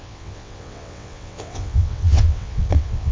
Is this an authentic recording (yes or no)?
no